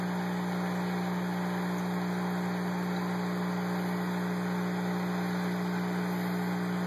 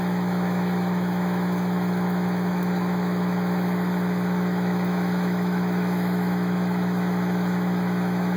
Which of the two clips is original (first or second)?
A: first